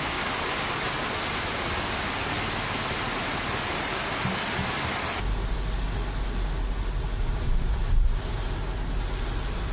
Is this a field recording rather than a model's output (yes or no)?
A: yes